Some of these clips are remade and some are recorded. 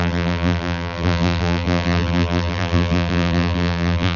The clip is remade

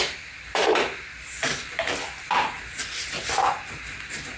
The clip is remade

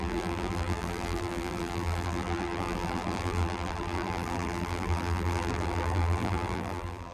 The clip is remade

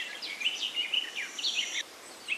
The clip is recorded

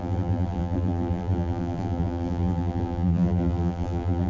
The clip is remade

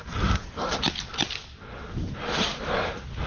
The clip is recorded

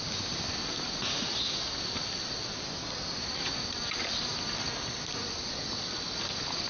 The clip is recorded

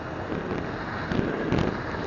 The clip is recorded